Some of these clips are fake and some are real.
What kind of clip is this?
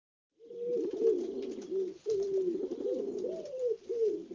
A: real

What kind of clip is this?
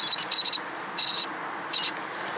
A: real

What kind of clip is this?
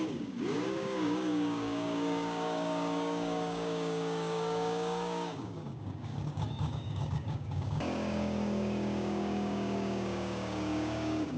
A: fake